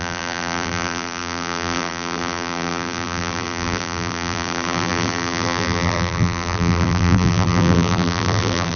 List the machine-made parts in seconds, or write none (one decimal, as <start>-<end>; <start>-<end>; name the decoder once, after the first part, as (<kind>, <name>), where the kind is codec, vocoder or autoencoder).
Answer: 0.0-8.8 (vocoder, BigVGAN v2)